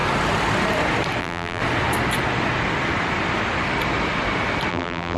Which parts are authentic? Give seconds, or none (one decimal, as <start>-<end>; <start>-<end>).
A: 0.0-1.2; 1.6-4.7